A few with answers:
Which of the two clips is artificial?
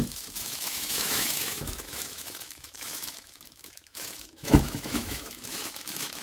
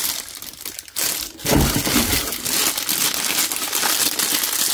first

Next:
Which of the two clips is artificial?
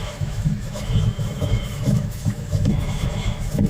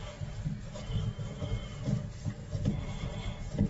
first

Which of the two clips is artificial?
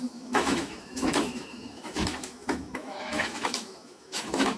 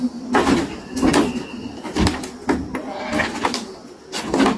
first